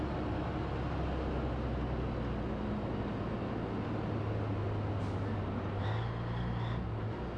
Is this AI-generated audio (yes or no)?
no